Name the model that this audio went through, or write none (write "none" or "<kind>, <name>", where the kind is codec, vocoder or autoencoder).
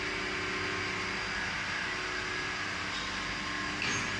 none